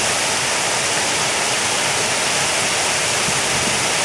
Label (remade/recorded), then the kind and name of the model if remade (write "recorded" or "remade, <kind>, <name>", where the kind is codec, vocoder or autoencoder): recorded